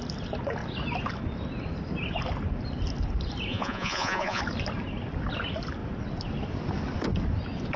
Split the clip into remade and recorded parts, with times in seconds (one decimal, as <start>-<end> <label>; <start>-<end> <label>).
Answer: 0.0-3.5 recorded; 3.5-4.4 remade; 4.4-7.8 recorded